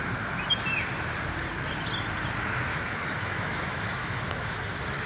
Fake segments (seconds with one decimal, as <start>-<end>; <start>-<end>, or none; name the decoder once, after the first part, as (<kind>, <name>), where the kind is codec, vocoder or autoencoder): 2.7-4.6 (autoencoder, DAC-VAE)